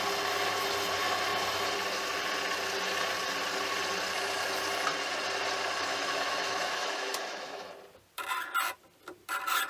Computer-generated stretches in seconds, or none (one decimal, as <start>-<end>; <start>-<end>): 5.9-7.7